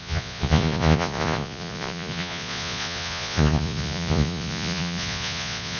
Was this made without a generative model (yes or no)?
no